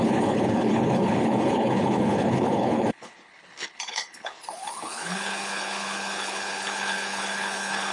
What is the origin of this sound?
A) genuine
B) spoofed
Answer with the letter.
B